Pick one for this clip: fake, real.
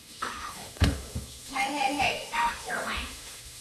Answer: fake